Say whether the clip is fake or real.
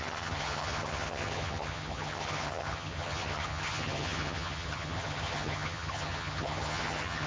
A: fake